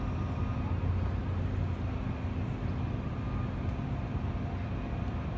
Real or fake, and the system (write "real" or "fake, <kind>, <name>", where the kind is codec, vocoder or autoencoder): real